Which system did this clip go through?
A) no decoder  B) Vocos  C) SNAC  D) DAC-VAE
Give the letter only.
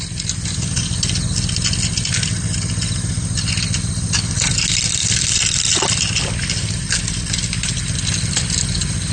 A